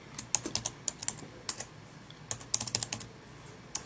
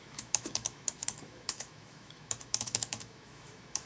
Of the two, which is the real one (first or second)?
first